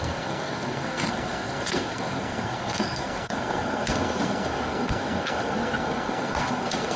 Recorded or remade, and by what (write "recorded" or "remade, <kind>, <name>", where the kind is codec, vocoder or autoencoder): remade, codec, SNAC